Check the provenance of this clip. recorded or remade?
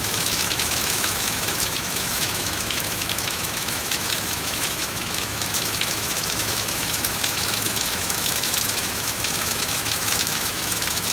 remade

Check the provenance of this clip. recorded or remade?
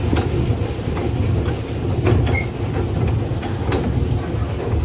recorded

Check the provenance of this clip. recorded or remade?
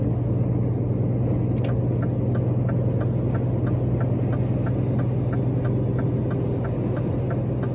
recorded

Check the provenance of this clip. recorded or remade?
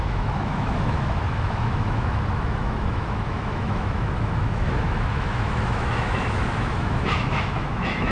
remade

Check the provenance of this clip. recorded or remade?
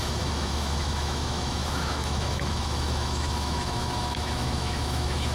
remade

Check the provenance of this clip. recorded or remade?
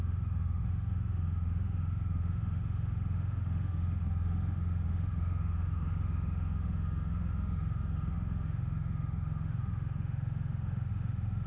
remade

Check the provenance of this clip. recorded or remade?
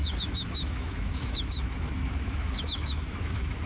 remade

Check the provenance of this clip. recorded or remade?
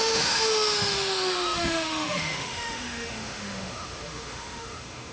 remade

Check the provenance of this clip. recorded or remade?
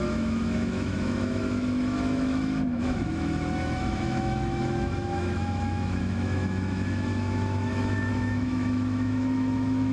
remade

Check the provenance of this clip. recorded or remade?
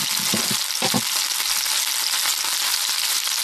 recorded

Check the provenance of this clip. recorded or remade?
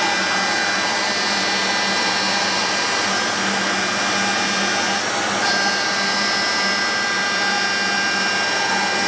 recorded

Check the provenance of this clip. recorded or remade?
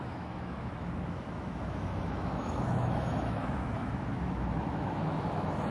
remade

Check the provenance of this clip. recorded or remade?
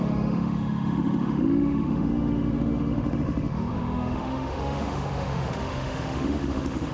remade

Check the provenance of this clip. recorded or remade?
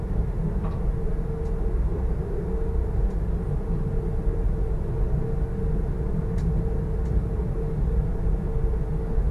recorded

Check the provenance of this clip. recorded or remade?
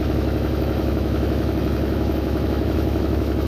remade